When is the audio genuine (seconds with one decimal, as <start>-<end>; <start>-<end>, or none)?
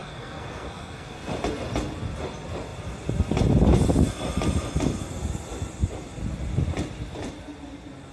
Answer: 1.3-8.1